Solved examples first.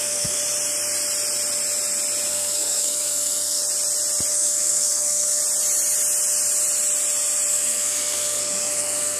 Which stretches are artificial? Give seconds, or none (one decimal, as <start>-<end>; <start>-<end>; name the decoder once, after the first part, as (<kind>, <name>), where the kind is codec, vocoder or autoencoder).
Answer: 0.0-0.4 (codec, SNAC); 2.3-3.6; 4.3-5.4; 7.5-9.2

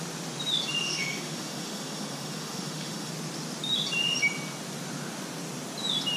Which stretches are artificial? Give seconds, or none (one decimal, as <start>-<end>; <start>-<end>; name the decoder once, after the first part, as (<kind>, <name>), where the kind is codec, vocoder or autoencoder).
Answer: 0.8-3.1 (autoencoder, DAC-VAE)

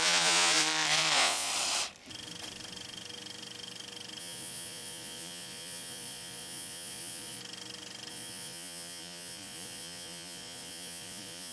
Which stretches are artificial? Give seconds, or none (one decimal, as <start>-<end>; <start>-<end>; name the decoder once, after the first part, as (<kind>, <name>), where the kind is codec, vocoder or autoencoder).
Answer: 0.0-1.5 (vocoder, Vocos); 4.2-7.4; 8.1-11.5

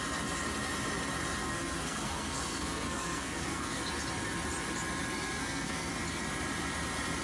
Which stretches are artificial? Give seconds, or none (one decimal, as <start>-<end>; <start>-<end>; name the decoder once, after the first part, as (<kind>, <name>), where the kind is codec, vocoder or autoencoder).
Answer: 1.4-3.8 (codec, SNAC); 5.4-5.9